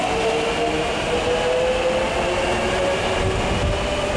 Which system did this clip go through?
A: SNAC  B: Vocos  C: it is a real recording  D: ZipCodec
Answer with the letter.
C